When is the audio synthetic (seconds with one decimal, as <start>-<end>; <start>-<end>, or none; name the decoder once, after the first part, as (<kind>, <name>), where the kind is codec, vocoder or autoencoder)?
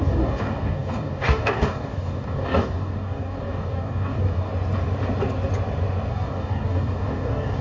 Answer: 0.0-4.5 (codec, DAC); 6.1-7.6